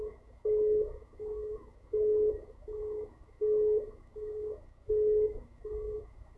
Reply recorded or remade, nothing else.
remade